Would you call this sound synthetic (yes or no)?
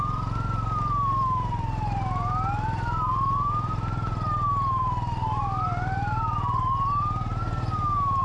yes